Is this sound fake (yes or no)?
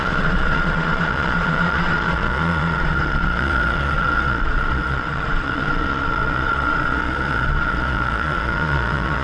yes